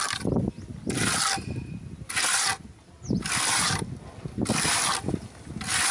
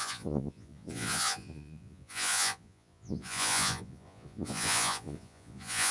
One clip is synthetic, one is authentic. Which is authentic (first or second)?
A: first